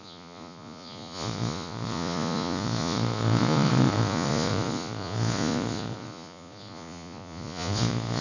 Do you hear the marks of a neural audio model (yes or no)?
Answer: yes